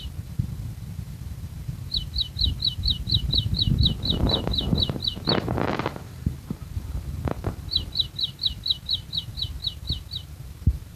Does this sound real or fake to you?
fake